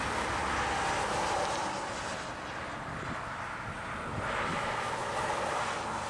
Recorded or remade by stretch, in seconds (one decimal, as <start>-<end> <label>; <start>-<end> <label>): 0.0-4.5 recorded; 4.5-5.1 remade; 5.1-6.1 recorded